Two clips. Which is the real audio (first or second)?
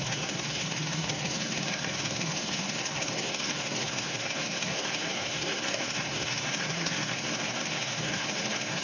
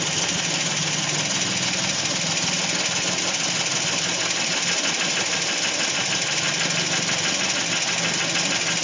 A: second